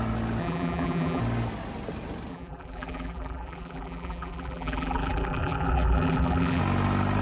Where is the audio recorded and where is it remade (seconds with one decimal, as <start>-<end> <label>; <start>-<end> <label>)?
0.0-0.4 recorded; 0.4-1.2 remade; 1.2-2.3 recorded; 2.3-6.6 remade; 6.6-7.2 recorded